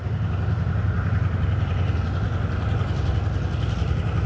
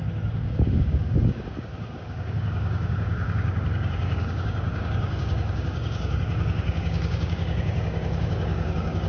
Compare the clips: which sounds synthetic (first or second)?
second